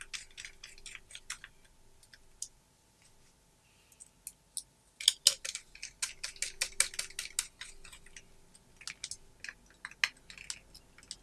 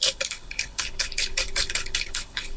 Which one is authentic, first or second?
first